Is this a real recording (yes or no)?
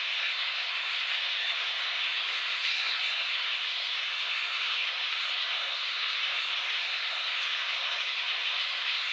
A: no